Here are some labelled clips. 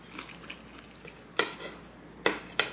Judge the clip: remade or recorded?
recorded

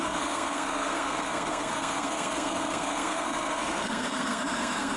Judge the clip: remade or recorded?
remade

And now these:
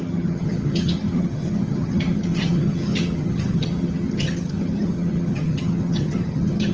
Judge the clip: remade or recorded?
remade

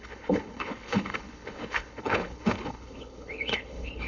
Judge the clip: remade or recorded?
remade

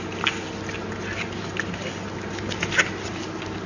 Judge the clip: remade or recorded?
recorded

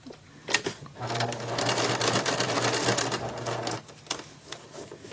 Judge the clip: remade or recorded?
recorded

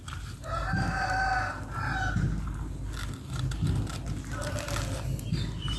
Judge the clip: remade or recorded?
recorded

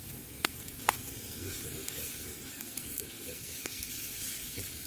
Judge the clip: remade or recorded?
remade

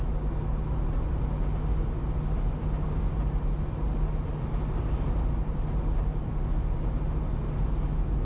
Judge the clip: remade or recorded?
recorded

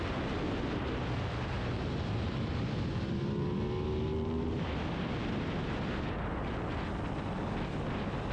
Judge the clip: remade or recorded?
recorded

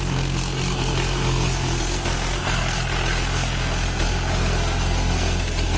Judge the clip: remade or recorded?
remade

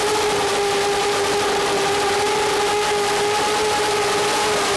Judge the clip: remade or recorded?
recorded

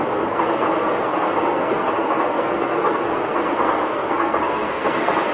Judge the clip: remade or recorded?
remade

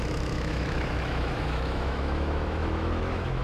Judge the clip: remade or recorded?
remade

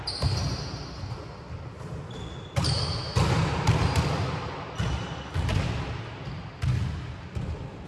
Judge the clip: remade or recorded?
recorded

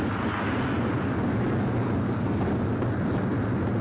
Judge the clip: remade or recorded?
recorded